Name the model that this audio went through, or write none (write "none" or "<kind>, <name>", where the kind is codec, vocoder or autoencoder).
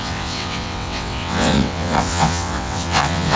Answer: vocoder, WaveNeXt